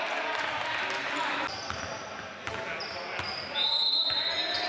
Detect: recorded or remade recorded